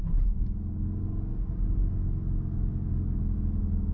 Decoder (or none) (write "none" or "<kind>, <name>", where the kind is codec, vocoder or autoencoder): none